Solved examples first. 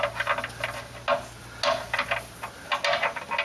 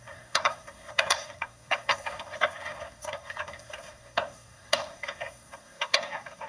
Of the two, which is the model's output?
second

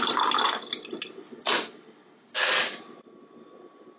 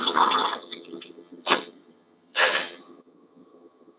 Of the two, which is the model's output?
second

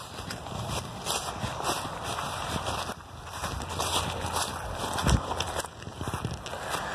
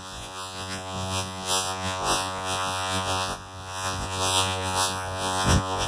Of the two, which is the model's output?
second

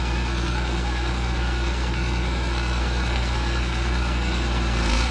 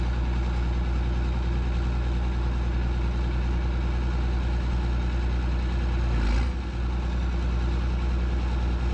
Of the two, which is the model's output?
first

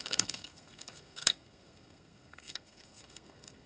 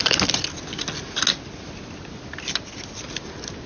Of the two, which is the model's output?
first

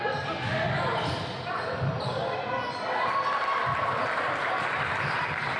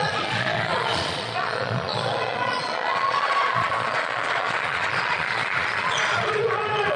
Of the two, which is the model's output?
second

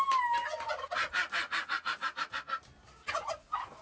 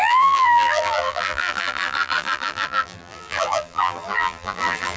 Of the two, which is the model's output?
second